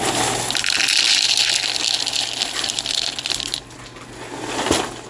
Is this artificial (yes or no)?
no